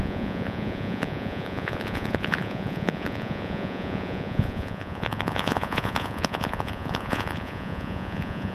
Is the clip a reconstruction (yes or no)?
yes